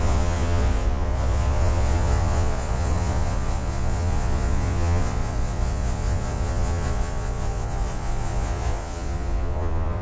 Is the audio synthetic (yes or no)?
yes